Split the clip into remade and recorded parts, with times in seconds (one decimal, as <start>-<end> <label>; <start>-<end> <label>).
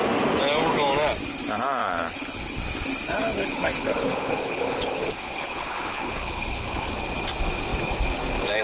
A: 0.0-1.8 recorded; 1.8-2.6 remade; 2.6-3.2 recorded; 3.2-6.9 remade; 6.9-8.6 recorded